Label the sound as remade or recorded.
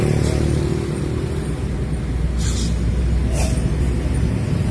recorded